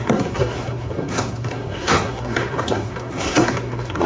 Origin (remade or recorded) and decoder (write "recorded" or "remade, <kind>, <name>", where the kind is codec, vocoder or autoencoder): remade, codec, SNAC